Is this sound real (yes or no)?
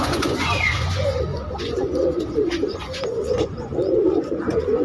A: no